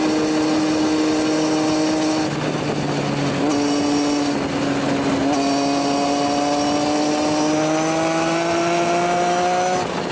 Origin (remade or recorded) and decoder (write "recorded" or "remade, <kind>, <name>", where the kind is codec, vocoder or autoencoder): recorded